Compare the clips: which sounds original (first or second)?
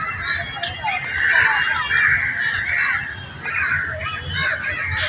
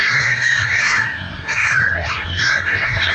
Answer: first